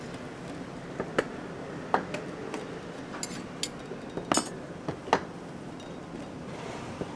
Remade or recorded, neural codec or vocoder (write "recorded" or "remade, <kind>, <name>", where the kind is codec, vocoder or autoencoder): recorded